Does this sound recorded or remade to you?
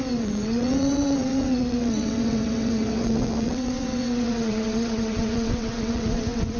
remade